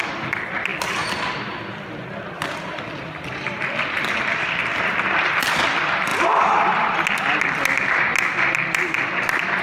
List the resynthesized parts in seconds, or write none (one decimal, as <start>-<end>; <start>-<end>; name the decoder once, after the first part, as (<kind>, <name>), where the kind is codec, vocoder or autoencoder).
none